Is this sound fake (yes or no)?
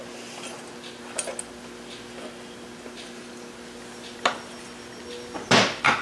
no